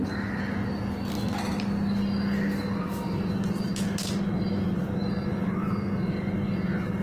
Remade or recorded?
recorded